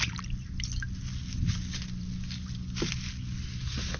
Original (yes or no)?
yes